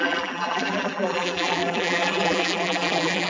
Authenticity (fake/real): fake